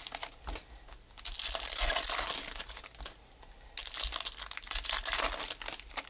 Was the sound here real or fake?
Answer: real